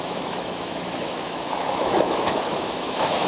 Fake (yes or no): yes